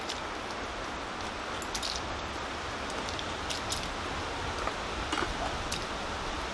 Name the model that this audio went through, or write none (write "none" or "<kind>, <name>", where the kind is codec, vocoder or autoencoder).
none